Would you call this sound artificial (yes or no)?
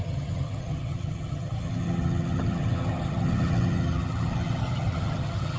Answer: yes